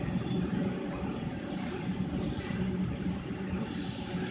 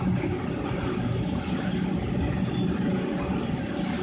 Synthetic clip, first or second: first